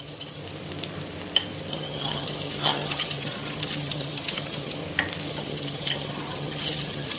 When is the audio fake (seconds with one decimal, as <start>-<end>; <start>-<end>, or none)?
0.0-0.4; 1.7-4.8; 5.3-7.2